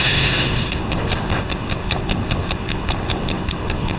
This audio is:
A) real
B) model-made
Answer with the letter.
B